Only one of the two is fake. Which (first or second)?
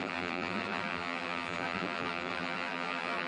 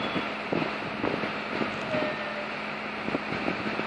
first